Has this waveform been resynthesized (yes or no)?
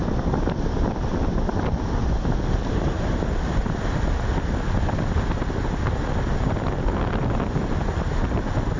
no